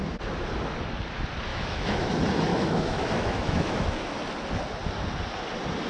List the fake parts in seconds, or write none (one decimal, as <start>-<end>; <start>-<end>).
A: 1.5-2.1; 2.5-3.9

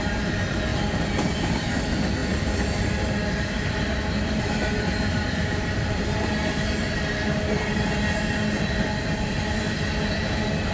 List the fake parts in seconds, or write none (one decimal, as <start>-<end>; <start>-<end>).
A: none

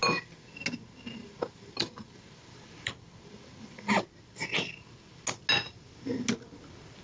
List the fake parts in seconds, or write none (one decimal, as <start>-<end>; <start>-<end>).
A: none

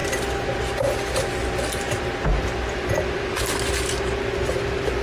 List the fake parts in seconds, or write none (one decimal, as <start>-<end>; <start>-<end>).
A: none